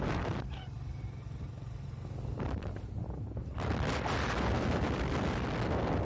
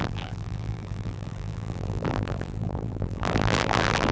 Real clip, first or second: first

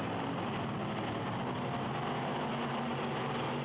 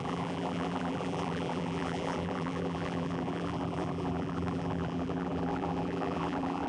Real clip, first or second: first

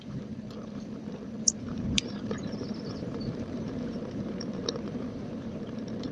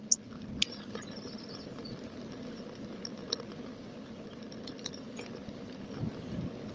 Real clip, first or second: second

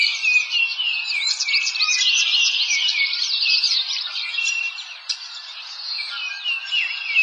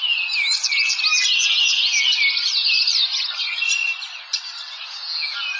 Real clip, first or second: second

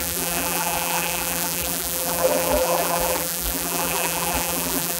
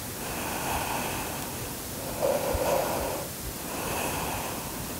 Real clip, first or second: second